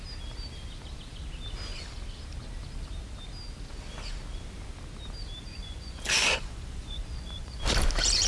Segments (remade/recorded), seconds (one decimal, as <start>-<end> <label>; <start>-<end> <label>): 0.0-5.5 recorded; 5.5-7.6 remade; 7.6-8.3 recorded